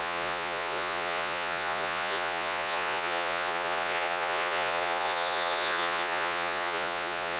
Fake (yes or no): yes